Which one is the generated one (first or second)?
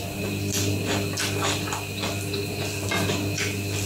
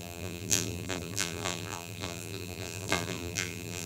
second